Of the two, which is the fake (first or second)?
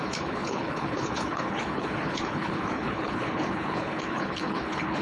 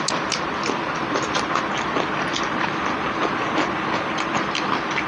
first